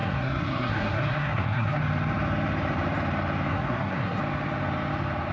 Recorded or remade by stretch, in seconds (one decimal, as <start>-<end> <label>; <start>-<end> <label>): 0.0-1.8 remade; 1.8-3.5 recorded; 3.5-4.2 remade; 4.2-5.3 recorded